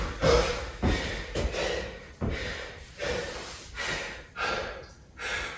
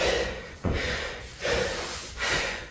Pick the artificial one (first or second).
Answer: second